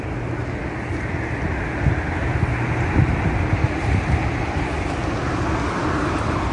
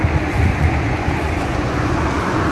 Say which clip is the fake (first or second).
second